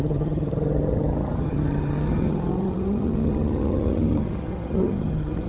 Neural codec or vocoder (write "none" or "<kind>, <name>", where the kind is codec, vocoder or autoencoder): vocoder, HiFi-GAN